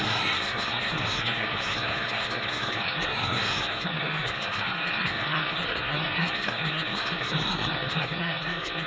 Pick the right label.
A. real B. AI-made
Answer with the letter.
B